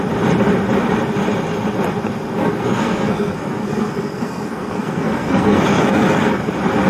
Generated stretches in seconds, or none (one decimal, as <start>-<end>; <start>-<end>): 2.4-6.5